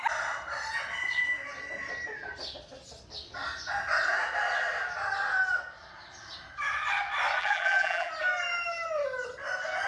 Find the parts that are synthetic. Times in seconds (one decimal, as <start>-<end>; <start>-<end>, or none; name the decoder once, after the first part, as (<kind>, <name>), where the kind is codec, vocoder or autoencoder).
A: 7.4-8.1 (vocoder, BigVGAN v2)